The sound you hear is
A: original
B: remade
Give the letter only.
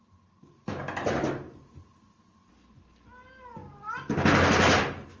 A